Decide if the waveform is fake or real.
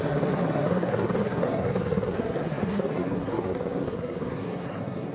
fake